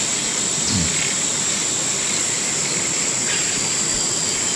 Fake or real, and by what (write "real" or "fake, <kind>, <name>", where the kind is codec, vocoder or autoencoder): real